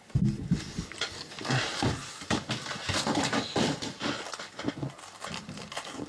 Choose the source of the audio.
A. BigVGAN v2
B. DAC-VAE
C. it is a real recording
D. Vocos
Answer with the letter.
C